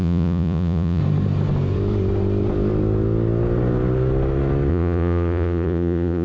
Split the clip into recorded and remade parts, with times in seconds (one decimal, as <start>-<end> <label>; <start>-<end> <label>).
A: 0.0-1.0 remade; 1.0-4.7 recorded; 4.7-6.2 remade